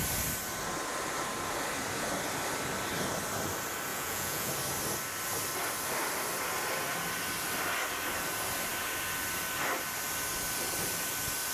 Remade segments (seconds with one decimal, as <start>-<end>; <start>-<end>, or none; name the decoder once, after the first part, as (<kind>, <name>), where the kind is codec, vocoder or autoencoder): 3.9-4.5 (vocoder, Vocos)